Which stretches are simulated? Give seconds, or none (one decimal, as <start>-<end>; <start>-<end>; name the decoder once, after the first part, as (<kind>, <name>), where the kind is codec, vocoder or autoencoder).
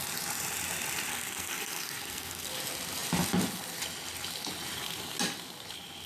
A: 1.1-2.5 (codec, SNAC)